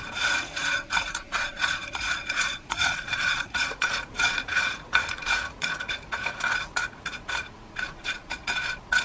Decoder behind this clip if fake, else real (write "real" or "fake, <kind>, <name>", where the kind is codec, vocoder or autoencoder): fake, vocoder, Vocos